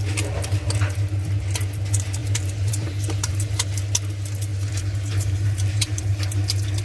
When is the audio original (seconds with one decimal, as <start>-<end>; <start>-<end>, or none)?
0.0-2.2; 3.8-4.5; 6.0-6.8